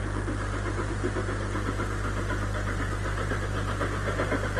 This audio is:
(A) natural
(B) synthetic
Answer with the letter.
A